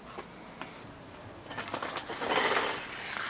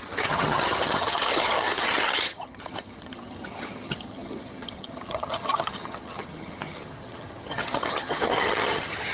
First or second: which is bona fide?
first